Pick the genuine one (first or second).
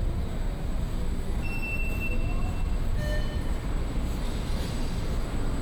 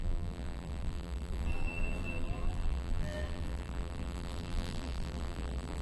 first